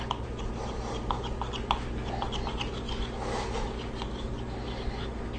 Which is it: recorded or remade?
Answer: recorded